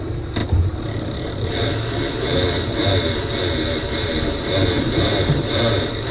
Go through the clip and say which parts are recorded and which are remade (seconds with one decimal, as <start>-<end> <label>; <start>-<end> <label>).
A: 0.0-0.4 remade; 0.4-1.0 recorded; 1.0-6.1 remade